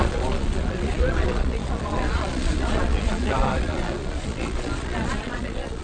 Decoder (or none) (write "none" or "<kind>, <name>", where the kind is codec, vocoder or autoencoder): vocoder, Vocos